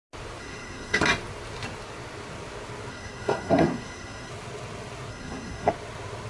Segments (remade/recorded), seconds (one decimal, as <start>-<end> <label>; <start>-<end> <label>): 0.0-0.4 recorded; 0.4-1.0 remade; 1.0-2.9 recorded; 2.9-4.3 remade; 4.3-5.1 recorded; 5.1-5.7 remade; 5.7-6.3 recorded